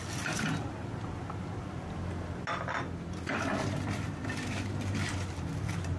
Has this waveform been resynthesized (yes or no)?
no